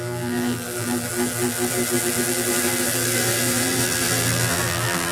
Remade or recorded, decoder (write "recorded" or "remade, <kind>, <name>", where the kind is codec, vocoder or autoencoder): remade, vocoder, BigVGAN v2